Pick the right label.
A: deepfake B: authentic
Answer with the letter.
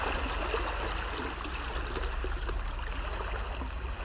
B